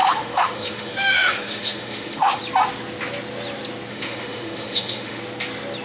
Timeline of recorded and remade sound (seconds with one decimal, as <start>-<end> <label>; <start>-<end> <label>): 0.0-2.4 remade; 2.4-3.9 recorded; 3.9-5.2 remade; 5.2-5.8 recorded